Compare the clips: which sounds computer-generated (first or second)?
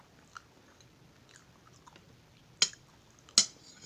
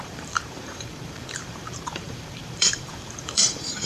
second